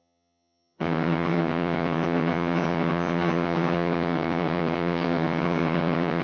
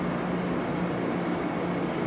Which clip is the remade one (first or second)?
first